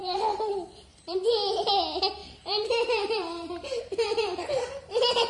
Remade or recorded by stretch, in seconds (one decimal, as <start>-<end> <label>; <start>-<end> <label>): 0.0-0.5 remade; 0.5-0.9 recorded; 0.9-1.7 remade; 1.7-2.2 recorded; 2.2-5.3 remade